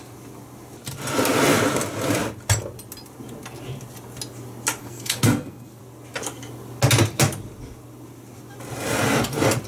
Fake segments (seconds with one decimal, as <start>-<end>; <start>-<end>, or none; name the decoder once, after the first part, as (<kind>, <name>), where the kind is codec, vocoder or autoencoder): 4.8-5.8 (codec, SNAC)

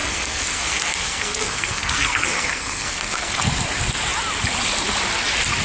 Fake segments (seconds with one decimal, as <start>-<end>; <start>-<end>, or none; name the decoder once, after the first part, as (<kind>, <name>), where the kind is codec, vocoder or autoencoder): 0.0-3.4 (codec, SNAC)

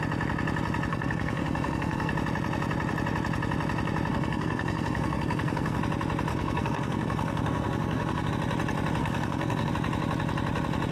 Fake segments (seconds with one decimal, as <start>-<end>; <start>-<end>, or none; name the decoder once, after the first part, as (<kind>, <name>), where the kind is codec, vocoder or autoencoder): 0.9-2.1 (codec, SNAC); 4.1-5.8; 6.3-8.3; 9.0-9.7

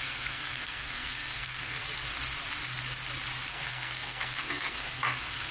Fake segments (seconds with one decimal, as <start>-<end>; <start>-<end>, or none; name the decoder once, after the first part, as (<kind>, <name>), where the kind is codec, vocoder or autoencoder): 0.0-1.8 (codec, SNAC); 3.5-5.5